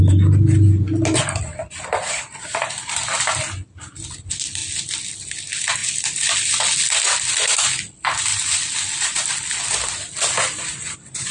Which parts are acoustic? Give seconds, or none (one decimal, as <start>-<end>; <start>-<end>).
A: 0.0-1.6; 3.4-5.8; 6.6-8.3; 9.3-11.3